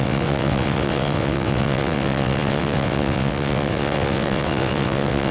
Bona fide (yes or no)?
no